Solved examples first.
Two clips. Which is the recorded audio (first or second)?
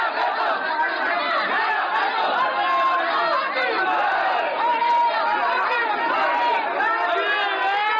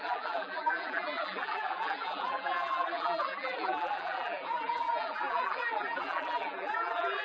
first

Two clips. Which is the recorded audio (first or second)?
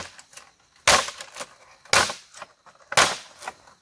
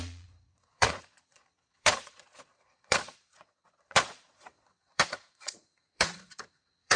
first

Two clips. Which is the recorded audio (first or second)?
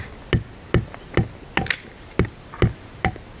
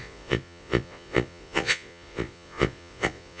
first